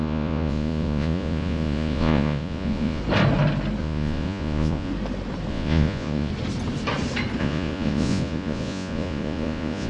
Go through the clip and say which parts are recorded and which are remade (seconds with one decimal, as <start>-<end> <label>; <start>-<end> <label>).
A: 0.0-3.0 remade; 3.0-3.8 recorded; 3.8-4.9 remade; 4.9-5.5 recorded; 5.5-6.3 remade; 6.3-7.4 recorded; 7.4-9.9 remade